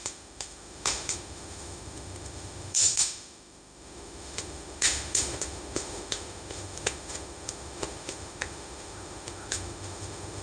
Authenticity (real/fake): fake